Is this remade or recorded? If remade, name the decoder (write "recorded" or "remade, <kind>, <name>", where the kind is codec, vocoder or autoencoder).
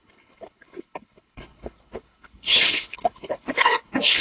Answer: remade, codec, HILCodec